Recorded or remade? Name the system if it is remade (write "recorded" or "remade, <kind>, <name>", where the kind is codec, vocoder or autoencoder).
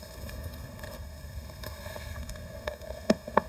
remade, codec, SNAC